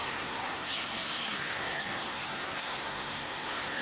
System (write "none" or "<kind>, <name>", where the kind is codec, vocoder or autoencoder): codec, SNAC